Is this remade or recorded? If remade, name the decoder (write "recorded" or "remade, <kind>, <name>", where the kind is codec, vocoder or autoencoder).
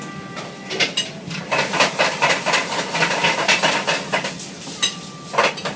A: recorded